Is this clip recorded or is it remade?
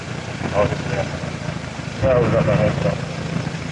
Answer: recorded